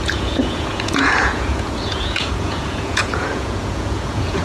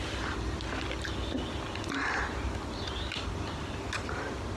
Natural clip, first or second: second